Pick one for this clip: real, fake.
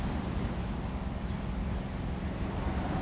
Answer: real